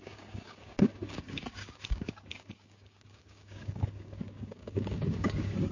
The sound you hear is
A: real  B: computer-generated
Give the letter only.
B